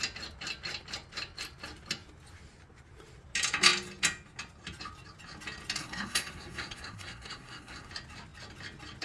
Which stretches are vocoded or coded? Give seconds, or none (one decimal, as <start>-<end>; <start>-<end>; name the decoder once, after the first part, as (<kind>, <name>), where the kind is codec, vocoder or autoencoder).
5.8-7.9 (codec, SNAC)